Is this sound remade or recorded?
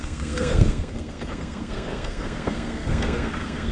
remade